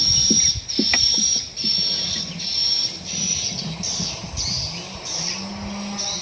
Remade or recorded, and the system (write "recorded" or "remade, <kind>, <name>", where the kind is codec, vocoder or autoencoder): recorded